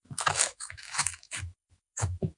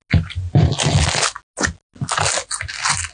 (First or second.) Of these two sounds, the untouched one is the second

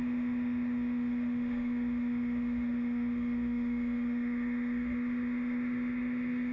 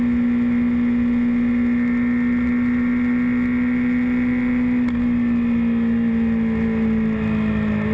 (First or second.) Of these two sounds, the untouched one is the second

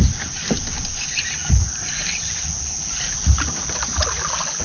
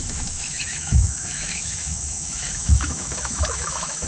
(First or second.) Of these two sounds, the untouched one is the first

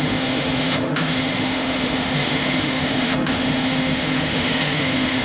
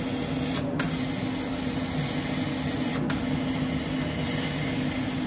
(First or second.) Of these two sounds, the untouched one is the second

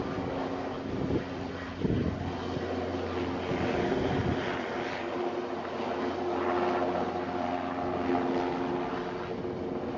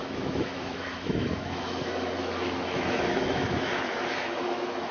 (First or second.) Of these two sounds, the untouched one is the first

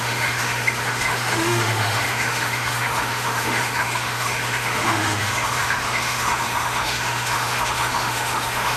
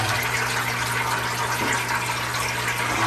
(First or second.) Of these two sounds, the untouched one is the second